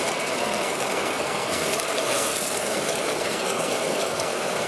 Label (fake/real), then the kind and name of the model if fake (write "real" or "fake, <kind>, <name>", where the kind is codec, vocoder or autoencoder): fake, codec, SNAC